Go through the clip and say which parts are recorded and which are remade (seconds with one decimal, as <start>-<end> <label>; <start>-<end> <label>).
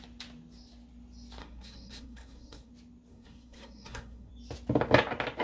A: 0.0-1.4 recorded; 1.4-2.7 remade; 2.7-3.1 recorded; 3.1-4.3 remade; 4.3-5.4 recorded